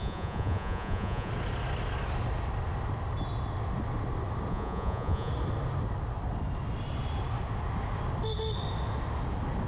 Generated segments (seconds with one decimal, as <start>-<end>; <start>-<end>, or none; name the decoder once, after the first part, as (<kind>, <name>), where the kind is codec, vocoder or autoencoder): 0.0-1.3 (vocoder, Vocos); 4.5-5.3